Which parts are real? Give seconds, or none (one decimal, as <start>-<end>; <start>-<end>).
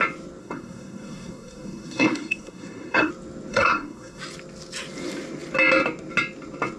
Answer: 0.0-0.4; 3.1-3.5; 4.2-6.8